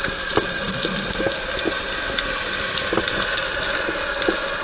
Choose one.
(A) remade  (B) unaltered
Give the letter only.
B